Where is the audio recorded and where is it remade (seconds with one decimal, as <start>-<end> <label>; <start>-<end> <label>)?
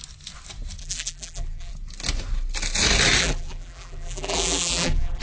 0.0-0.8 recorded; 0.8-1.7 remade; 1.7-3.2 recorded; 3.2-5.2 remade